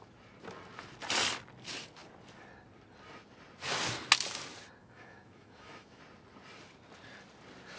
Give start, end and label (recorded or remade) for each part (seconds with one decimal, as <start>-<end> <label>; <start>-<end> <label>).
0.0-4.8 recorded; 4.8-6.0 remade; 6.0-7.8 recorded